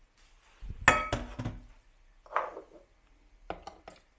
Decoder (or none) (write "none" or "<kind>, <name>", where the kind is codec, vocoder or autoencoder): none